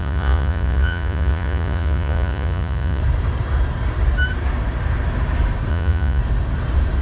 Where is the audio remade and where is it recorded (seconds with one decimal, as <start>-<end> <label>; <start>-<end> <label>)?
0.0-3.0 remade; 3.0-5.7 recorded; 5.7-6.2 remade; 6.2-7.0 recorded